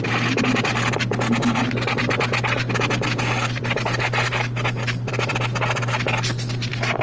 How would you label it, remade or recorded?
recorded